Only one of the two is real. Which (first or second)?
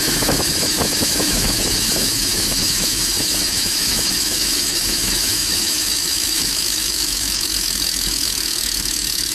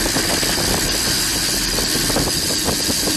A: second